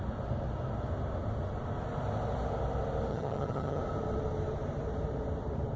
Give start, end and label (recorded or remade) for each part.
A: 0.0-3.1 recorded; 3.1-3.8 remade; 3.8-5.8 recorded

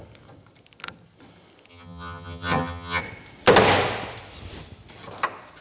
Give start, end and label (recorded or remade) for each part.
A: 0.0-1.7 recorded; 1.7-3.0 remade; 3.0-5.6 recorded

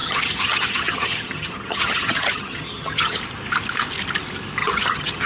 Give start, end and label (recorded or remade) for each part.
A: 0.0-3.2 remade; 3.2-4.6 recorded; 4.6-5.3 remade